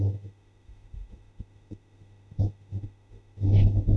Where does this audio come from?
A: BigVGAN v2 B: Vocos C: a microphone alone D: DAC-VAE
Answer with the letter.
D